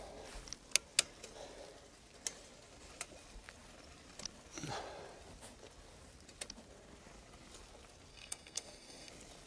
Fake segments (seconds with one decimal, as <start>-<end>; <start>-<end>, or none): 8.1-9.1